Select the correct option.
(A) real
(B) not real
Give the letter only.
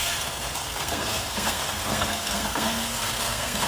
B